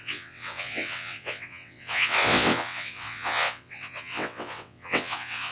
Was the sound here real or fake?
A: fake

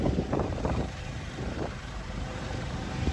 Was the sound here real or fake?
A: fake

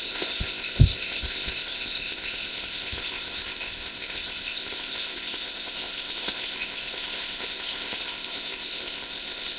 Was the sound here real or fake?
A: fake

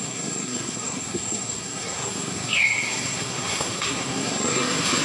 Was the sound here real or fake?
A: fake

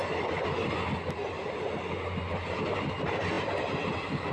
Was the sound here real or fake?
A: real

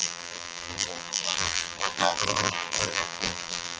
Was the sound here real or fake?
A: fake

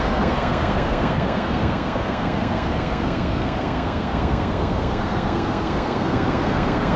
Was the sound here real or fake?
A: fake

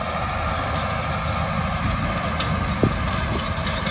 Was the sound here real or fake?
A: real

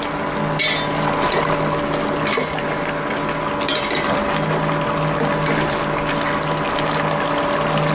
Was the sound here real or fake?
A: real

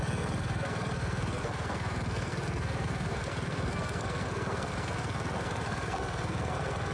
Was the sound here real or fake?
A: fake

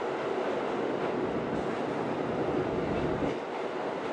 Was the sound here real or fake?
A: real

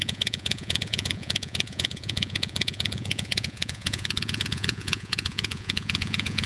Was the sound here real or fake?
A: fake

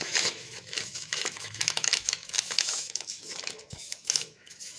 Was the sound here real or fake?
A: fake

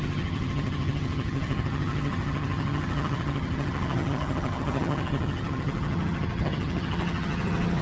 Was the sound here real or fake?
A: fake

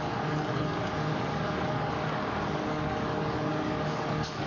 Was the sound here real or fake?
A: fake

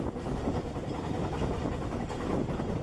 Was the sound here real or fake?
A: real